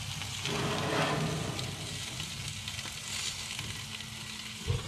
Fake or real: real